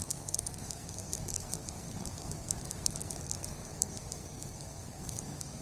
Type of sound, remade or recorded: remade